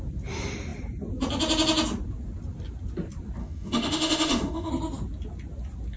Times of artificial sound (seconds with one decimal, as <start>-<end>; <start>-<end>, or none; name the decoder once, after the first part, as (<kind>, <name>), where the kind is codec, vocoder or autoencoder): 3.4-4.7 (autoencoder, DAC-VAE)